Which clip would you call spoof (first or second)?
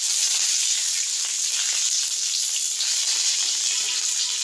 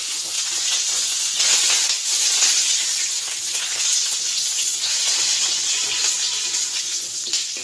second